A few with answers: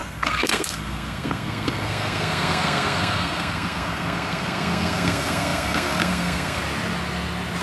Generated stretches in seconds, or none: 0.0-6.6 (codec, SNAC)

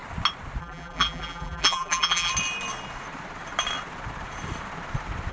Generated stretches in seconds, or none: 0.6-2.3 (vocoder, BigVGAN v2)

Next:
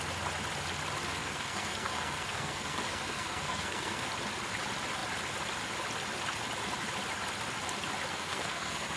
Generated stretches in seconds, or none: 1.2-4.1 (codec, SNAC); 8.1-9.0

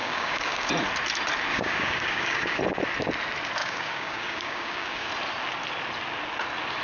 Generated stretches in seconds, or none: 0.0-0.7 (codec, DAC); 1.5-2.6; 3.6-5.1